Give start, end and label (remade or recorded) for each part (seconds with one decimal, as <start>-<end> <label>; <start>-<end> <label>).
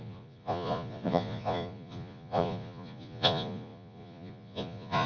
0.0-5.1 remade